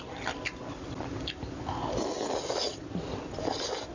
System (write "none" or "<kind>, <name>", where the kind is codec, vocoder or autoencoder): none